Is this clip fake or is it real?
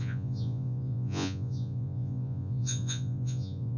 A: fake